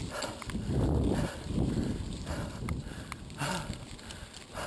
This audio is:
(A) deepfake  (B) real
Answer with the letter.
A